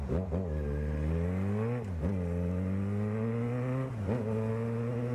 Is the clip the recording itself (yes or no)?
yes